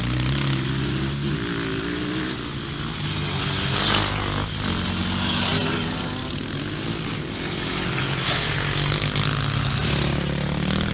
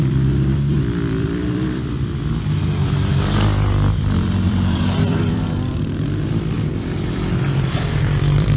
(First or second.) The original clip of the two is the first